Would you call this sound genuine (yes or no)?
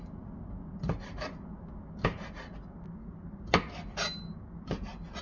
yes